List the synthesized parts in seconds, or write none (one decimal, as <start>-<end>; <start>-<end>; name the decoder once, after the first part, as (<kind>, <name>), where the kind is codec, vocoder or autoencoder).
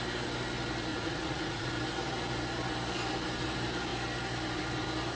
0.9-1.7 (vocoder, Vocos)